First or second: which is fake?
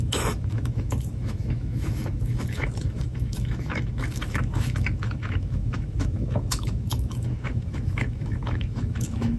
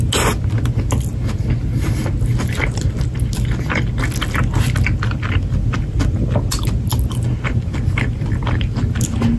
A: first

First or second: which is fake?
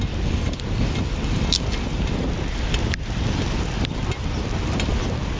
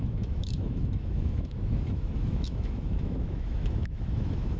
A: second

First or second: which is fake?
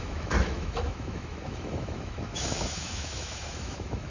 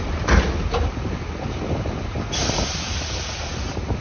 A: first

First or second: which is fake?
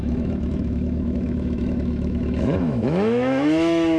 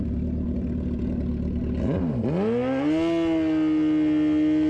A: first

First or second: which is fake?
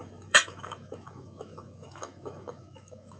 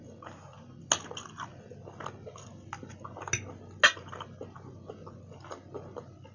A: first